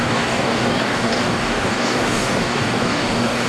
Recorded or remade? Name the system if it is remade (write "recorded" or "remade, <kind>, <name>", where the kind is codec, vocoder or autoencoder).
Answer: remade, codec, DAC